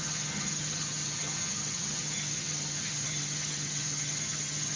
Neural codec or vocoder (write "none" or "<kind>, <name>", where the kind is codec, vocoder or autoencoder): vocoder, HiFi-GAN